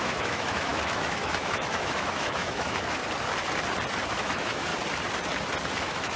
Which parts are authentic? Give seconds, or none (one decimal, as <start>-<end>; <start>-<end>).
3.0-4.1; 4.7-5.8